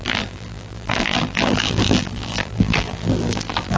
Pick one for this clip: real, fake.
fake